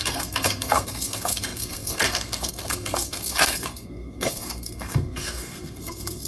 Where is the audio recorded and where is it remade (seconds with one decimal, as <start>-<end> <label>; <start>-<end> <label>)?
0.0-6.3 remade